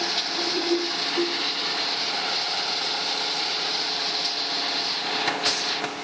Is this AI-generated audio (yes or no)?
no